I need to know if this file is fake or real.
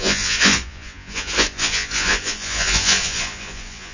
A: fake